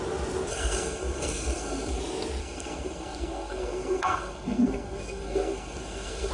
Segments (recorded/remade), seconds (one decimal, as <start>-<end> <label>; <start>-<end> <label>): 0.0-0.5 recorded; 0.5-2.0 remade; 2.0-2.4 recorded; 2.4-6.3 remade